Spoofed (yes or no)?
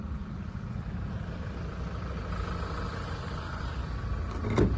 no